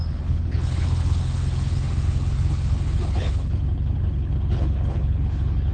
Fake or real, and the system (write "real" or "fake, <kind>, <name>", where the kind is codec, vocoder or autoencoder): fake, codec, HILCodec